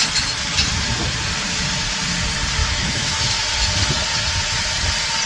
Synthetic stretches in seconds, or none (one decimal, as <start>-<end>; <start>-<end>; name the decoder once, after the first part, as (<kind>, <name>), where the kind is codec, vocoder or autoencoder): 2.6-3.3 (autoencoder, DAC-VAE)